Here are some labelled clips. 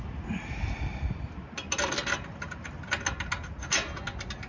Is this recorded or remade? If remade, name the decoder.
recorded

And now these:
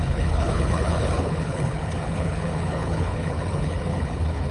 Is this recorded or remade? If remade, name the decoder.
remade, codec, HILCodec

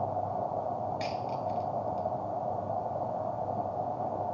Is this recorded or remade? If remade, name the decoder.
recorded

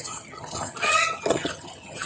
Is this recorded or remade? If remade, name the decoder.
remade, vocoder, HiFi-GAN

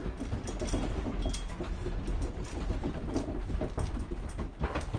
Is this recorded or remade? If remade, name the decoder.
recorded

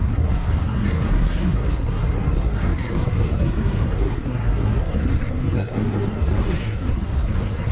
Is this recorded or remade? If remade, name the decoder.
remade, codec, SNAC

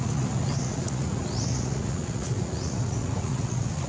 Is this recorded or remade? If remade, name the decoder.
remade, vocoder, Vocos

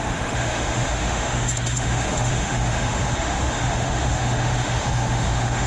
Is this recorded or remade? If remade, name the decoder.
remade, autoencoder, DAC-VAE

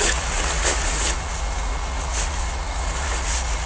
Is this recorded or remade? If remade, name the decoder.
remade, vocoder, Vocos